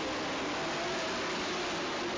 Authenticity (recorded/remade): recorded